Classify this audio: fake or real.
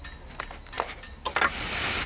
real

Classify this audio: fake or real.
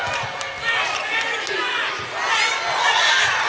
real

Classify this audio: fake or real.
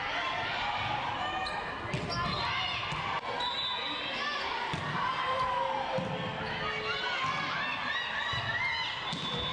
real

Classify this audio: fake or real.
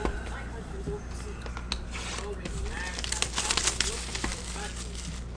real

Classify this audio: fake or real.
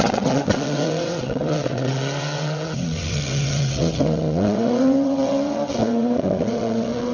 fake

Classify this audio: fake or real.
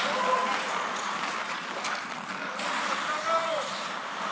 real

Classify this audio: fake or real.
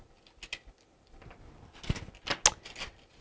real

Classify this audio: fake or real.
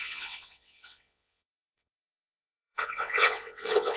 fake